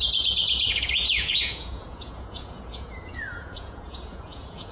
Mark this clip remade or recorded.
remade